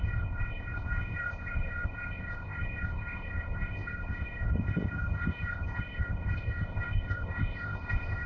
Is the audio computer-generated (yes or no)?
yes